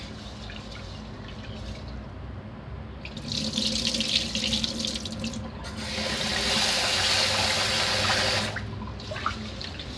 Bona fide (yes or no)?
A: yes